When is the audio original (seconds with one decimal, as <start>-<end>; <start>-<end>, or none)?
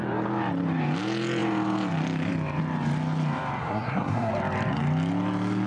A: 0.0-3.6; 4.3-5.7